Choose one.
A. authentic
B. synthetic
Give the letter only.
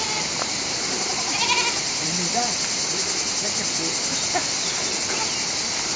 A